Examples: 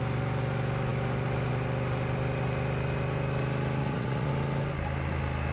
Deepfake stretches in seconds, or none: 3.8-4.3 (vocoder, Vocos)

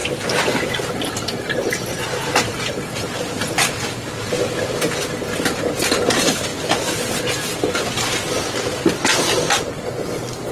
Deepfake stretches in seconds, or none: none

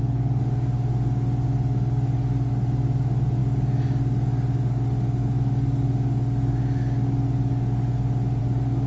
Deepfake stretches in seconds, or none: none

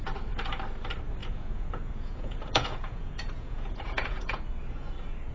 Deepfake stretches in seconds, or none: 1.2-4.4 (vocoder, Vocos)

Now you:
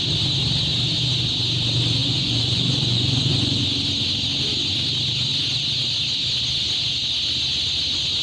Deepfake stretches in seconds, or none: 2.0-3.6 (vocoder, Vocos)